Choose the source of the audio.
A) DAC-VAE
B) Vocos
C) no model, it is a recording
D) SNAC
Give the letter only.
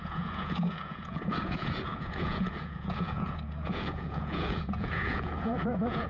B